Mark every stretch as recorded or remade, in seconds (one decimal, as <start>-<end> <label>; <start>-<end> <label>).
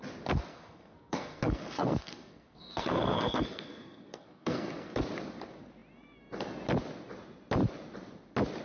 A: 0.0-0.5 recorded; 0.5-5.0 remade; 5.0-8.6 recorded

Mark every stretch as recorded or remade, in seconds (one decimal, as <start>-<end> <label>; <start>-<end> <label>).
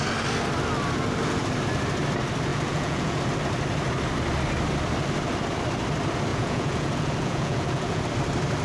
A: 0.0-2.5 recorded; 2.5-3.2 remade; 3.2-6.3 recorded; 6.3-8.0 remade; 8.0-8.6 recorded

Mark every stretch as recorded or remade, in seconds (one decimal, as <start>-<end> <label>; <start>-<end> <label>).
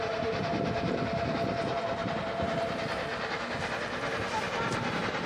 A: 0.0-0.5 remade; 0.5-2.0 recorded; 2.0-3.1 remade; 3.1-4.3 recorded; 4.3-5.3 remade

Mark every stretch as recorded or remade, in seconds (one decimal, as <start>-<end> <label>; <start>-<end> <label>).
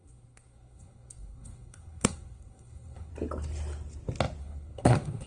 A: 0.0-3.1 remade; 3.1-4.4 recorded; 4.4-5.3 remade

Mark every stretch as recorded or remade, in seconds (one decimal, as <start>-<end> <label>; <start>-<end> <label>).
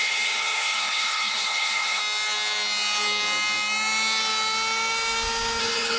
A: 0.0-2.0 remade; 2.0-5.6 recorded; 5.6-6.0 remade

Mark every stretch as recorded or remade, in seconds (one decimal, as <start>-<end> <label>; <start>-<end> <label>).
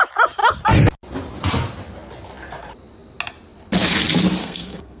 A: 0.0-4.4 recorded; 4.4-5.0 remade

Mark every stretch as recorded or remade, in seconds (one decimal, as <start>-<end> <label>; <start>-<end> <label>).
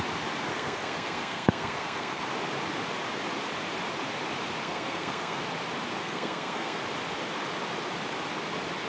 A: 0.0-0.5 recorded; 0.5-2.2 remade; 2.2-4.6 recorded; 4.6-5.4 remade; 5.4-6.0 recorded; 6.0-6.8 remade; 6.8-8.9 recorded